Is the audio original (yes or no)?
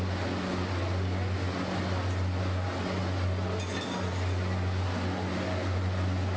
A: yes